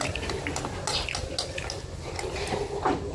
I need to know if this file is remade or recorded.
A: recorded